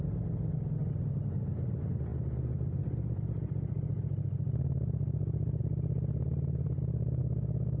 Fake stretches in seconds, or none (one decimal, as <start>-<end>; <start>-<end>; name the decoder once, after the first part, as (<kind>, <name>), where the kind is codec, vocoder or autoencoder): 7.2-7.8 (autoencoder, DAC-VAE)